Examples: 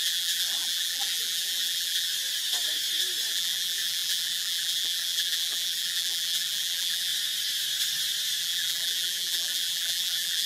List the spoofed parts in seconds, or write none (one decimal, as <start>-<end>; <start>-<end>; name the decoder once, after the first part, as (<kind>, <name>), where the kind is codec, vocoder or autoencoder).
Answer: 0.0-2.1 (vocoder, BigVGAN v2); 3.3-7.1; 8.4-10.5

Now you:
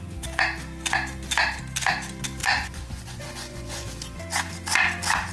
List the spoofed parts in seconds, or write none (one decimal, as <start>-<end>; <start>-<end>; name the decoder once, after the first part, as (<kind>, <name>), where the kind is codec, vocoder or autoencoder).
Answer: 2.4-3.9 (vocoder, Vocos)

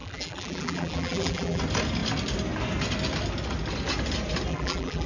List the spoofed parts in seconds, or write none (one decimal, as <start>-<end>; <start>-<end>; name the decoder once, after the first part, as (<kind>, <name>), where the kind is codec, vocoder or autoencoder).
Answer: 0.0-1.6 (vocoder, BigVGAN v2); 4.5-5.1

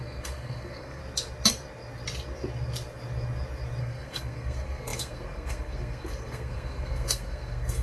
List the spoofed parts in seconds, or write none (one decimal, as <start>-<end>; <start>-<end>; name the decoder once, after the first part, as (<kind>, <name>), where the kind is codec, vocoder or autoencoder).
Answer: 0.0-1.0 (codec, SNAC); 3.8-7.8

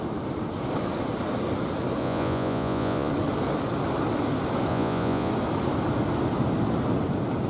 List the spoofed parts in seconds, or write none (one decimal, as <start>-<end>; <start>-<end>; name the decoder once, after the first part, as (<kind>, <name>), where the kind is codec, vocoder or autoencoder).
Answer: 2.0-3.1 (vocoder, Vocos); 4.7-5.3

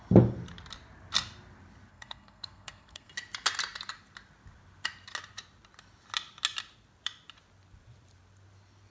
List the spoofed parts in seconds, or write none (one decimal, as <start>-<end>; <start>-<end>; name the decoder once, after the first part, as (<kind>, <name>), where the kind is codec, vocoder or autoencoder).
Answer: 1.9-3.1 (codec, SNAC)

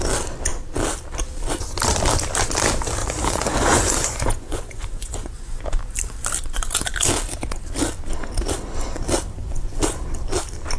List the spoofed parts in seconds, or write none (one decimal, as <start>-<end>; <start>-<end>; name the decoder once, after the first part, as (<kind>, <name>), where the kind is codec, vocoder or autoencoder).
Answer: 3.0-5.6 (vocoder, Vocos); 9.4-10.0

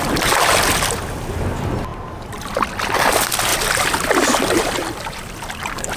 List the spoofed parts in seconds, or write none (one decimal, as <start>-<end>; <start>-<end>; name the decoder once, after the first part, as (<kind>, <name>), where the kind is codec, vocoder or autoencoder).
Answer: 4.8-6.0 (vocoder, BigVGAN v2)